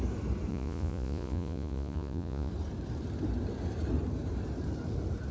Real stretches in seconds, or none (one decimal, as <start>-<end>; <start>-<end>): 0.0-0.5; 2.5-5.3